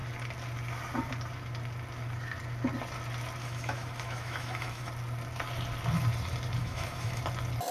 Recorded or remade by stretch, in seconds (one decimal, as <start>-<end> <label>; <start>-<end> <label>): 0.0-3.4 recorded; 3.4-4.9 remade; 4.9-6.6 recorded; 6.6-7.2 remade; 7.2-7.7 recorded